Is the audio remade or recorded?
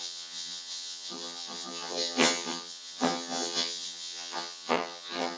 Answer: remade